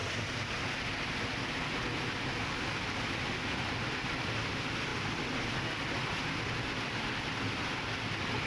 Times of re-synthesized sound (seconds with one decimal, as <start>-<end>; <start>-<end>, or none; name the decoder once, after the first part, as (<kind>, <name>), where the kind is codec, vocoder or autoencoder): none